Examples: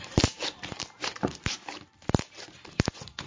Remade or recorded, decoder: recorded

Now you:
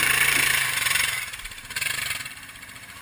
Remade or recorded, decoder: remade, vocoder, BigVGAN v2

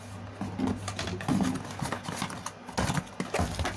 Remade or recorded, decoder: recorded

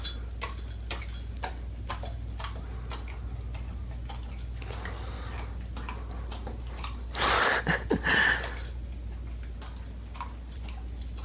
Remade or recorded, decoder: recorded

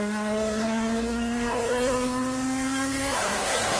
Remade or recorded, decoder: remade, codec, SNAC